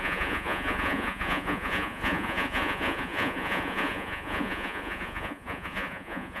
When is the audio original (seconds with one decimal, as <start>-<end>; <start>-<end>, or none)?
none